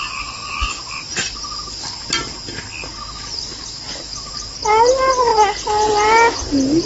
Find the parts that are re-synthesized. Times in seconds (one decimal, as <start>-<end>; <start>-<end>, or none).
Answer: none